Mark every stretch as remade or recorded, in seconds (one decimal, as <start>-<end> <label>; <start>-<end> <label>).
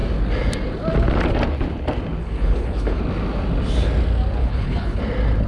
0.0-2.2 recorded; 2.2-3.0 remade; 3.0-4.4 recorded; 4.4-5.0 remade; 5.0-5.5 recorded